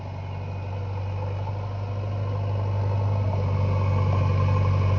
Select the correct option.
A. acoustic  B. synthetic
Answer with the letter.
A